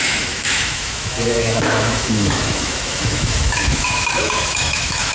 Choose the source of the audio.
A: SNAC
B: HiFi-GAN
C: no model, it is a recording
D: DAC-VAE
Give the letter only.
D